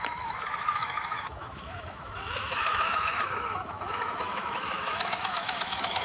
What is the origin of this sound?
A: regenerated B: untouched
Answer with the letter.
A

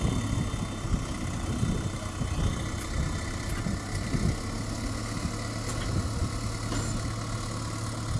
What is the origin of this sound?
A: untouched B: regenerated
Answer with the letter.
A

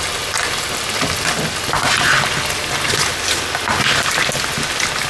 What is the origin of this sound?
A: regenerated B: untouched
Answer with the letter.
B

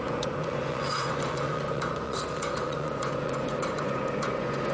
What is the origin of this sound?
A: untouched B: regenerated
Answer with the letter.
B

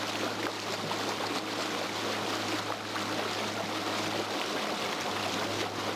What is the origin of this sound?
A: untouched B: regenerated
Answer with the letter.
A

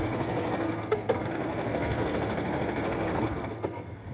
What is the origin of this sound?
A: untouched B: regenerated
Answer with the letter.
B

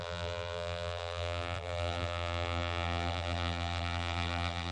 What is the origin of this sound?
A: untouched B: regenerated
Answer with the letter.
B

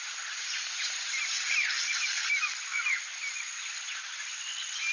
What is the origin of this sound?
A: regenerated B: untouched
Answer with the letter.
B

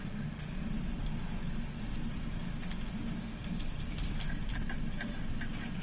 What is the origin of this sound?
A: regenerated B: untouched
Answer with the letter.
B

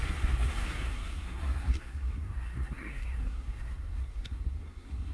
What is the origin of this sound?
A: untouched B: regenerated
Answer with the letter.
B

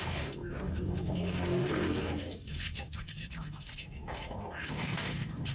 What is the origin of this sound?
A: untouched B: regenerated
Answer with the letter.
B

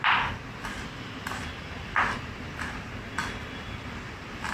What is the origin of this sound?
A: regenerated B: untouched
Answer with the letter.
B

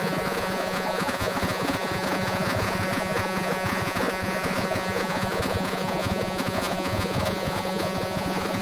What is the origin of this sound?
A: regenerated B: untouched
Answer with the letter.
A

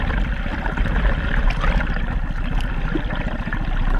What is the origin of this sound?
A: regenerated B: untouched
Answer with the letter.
B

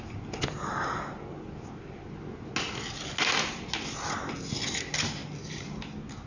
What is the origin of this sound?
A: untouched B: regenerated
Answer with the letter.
A